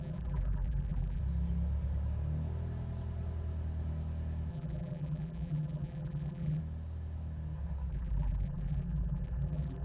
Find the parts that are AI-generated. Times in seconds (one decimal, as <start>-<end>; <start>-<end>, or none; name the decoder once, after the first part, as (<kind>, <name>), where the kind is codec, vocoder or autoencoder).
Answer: 0.0-1.2 (vocoder, BigVGAN v2); 4.5-6.6; 7.9-9.8